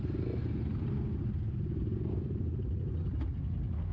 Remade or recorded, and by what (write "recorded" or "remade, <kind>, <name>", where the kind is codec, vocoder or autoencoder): recorded